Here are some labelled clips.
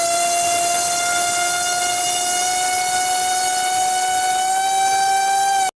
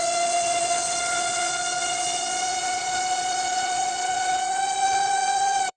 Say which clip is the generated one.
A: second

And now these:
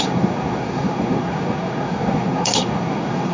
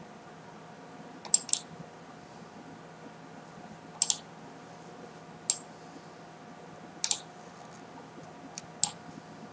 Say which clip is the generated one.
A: first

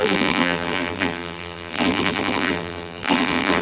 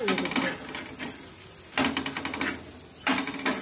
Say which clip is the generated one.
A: first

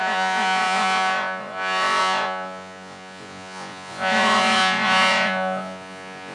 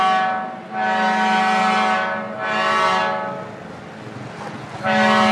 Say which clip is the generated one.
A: first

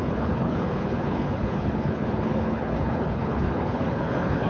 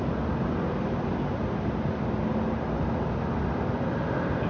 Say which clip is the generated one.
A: first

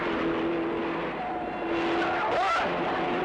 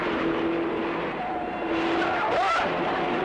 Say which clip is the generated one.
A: second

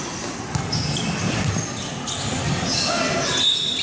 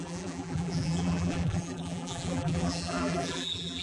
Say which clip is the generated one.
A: second